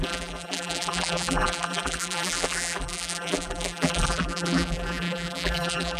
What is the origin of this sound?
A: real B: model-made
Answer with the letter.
B